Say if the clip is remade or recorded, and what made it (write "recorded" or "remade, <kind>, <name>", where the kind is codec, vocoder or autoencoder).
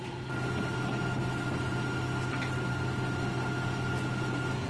recorded